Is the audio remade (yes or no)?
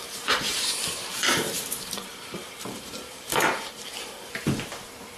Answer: yes